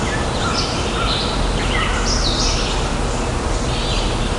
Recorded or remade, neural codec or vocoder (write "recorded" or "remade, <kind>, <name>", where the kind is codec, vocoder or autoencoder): recorded